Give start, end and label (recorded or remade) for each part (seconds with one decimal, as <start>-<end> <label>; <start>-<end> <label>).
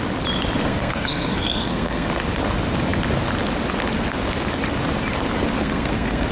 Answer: 0.0-0.6 recorded; 0.6-2.1 remade; 2.1-5.6 recorded; 5.6-6.3 remade